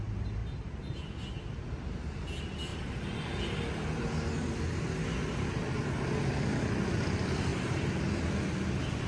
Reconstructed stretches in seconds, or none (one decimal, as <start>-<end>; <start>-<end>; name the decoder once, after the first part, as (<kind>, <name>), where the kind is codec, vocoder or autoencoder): 0.4-1.0 (vocoder, BigVGAN v2); 2.7-3.4; 7.5-8.1